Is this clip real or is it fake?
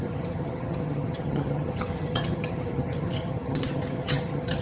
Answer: fake